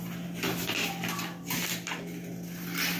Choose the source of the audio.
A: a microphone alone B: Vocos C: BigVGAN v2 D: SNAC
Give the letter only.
A